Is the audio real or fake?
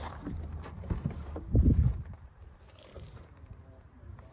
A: fake